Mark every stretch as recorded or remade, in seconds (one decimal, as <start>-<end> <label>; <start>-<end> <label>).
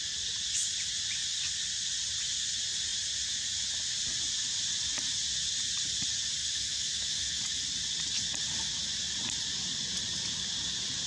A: 0.0-6.4 recorded; 6.4-7.4 remade; 7.4-11.1 recorded